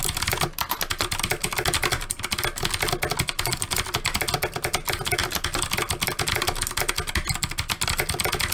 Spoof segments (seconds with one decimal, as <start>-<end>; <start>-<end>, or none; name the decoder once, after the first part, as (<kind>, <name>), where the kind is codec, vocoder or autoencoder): none